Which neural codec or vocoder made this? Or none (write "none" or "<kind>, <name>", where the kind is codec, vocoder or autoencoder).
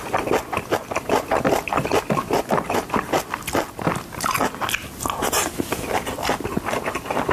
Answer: none